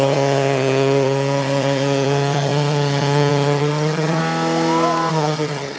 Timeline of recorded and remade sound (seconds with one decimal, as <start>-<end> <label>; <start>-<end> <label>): 0.0-4.2 remade; 4.2-5.1 recorded; 5.1-5.8 remade